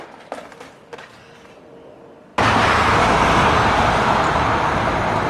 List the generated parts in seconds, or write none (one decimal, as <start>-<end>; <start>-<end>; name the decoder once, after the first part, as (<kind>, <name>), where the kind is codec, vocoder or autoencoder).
none